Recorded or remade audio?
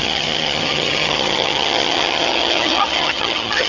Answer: remade